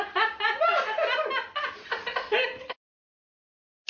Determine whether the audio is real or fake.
real